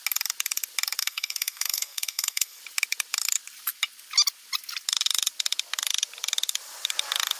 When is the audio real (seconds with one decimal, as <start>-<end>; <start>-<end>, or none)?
0.0-1.0; 2.6-7.4